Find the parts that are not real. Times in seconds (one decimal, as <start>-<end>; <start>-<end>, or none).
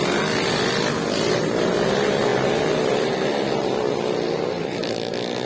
none